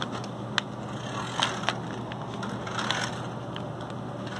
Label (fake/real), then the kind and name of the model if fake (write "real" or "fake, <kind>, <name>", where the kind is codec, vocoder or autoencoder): real